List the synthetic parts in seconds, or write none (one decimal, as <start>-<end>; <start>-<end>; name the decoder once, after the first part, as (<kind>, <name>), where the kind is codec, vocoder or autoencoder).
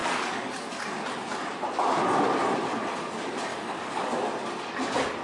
0.0-0.8 (codec, DAC); 3.5-4.1